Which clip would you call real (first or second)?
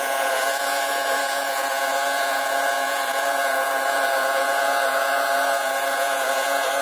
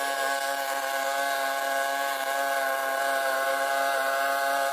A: second